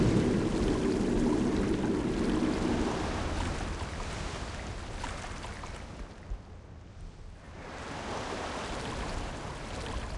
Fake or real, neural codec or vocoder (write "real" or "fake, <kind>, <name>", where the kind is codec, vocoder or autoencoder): real